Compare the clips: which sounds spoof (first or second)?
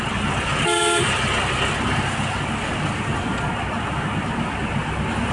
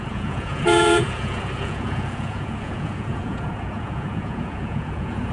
second